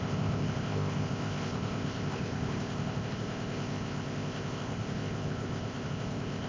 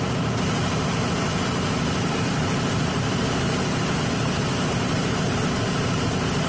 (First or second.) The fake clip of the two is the first